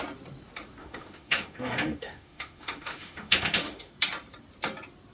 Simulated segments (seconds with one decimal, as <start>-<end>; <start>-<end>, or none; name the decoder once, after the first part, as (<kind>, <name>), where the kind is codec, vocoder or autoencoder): 0.8-3.9 (autoencoder, DAC-VAE)